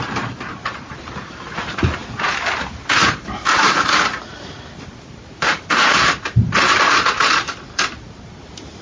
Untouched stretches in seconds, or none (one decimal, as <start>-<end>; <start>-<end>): none